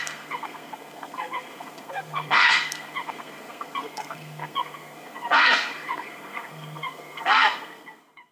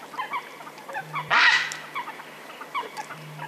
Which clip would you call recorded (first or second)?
second